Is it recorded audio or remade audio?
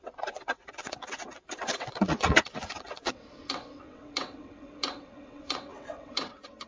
remade